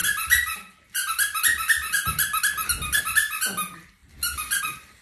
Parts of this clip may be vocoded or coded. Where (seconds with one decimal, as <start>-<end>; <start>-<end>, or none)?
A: none